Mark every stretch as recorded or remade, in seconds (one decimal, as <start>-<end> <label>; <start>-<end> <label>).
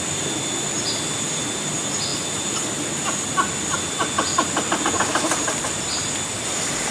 0.0-6.9 recorded